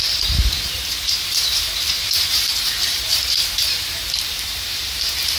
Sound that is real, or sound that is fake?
fake